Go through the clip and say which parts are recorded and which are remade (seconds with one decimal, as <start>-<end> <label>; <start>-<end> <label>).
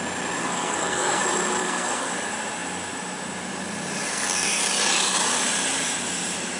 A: 0.0-0.4 recorded; 0.4-1.2 remade; 1.2-1.6 recorded; 1.6-2.1 remade; 2.1-4.1 recorded; 4.1-4.6 remade; 4.6-6.6 recorded